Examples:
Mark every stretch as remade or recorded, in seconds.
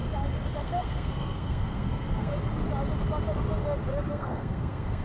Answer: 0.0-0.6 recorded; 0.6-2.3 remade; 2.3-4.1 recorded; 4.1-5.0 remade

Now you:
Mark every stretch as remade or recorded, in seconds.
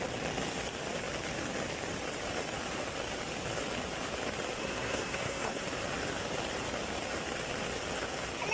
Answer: 0.0-4.6 recorded; 4.6-5.6 remade; 5.6-8.5 recorded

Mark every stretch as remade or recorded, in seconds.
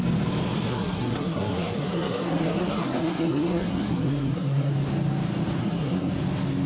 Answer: 0.0-0.7 recorded; 0.7-4.7 remade; 4.7-5.6 recorded; 5.6-6.1 remade; 6.1-6.7 recorded